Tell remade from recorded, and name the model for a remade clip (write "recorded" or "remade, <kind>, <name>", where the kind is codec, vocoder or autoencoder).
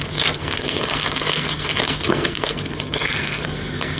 remade, codec, SNAC